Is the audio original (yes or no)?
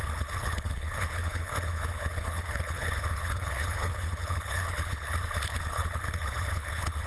no